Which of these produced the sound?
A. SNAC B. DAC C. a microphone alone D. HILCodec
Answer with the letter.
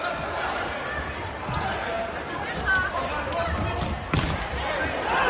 C